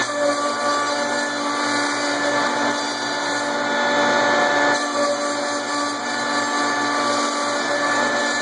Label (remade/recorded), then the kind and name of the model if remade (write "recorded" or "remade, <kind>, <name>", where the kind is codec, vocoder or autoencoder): recorded